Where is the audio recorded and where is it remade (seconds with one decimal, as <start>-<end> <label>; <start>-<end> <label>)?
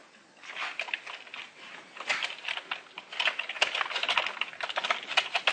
0.0-5.5 recorded